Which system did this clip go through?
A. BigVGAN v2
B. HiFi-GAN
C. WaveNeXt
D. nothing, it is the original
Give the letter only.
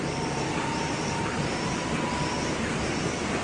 A